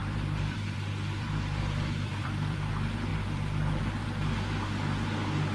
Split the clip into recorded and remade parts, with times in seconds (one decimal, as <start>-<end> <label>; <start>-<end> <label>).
0.0-2.7 remade; 2.7-3.1 recorded; 3.1-3.8 remade; 3.8-5.5 recorded